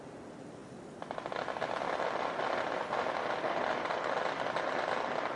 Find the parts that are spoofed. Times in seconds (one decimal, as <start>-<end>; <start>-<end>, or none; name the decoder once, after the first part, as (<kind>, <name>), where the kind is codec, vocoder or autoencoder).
none